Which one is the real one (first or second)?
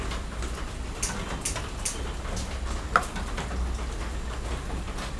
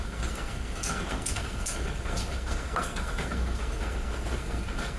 first